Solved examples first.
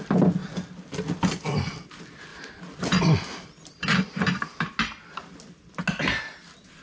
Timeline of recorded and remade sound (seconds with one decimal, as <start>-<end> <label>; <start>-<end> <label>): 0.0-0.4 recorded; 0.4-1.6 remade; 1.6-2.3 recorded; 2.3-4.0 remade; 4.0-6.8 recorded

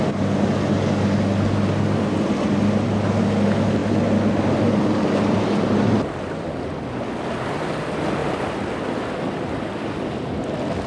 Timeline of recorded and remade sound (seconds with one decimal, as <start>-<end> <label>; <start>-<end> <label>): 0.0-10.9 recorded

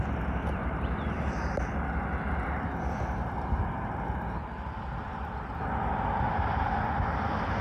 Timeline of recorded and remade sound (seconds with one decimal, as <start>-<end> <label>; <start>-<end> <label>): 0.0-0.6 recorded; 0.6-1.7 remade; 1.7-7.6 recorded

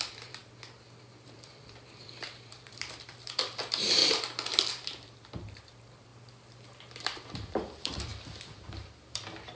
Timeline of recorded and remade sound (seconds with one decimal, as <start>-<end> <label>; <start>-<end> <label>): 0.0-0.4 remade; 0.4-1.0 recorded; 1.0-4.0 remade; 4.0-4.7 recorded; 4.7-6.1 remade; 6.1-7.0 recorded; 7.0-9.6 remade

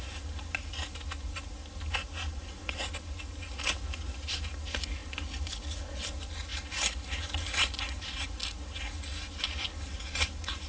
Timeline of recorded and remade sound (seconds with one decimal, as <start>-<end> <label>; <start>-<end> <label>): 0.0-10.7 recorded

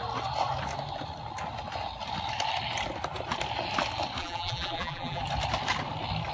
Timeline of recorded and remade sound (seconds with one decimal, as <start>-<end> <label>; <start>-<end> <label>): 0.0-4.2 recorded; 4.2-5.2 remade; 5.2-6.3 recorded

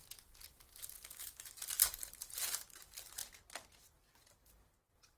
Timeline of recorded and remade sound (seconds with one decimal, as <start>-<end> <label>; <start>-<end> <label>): 0.0-3.2 remade; 3.2-3.8 recorded; 3.8-5.2 remade